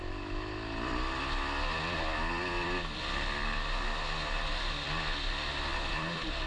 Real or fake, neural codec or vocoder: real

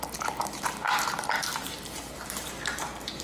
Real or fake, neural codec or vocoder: fake, vocoder, BigVGAN v2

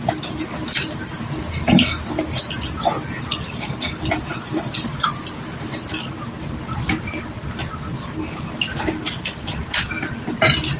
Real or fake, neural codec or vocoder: real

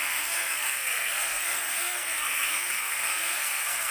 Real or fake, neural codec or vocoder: fake, codec, SNAC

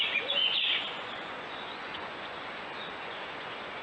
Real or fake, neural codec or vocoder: fake, vocoder, Vocos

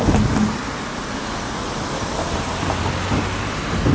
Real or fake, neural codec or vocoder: real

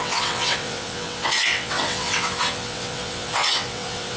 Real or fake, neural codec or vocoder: fake, vocoder, WaveNeXt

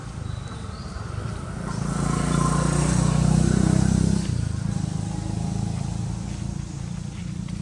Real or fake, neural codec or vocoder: real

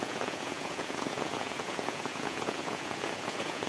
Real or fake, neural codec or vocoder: fake, vocoder, Vocos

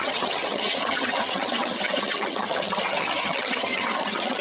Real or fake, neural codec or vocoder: fake, vocoder, HiFi-GAN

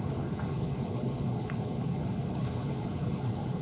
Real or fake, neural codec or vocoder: fake, codec, HILCodec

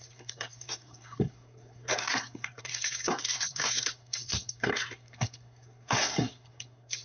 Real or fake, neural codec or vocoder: fake, codec, SNAC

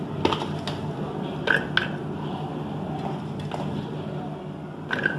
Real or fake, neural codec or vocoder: real